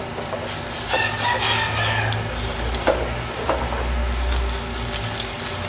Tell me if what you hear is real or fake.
real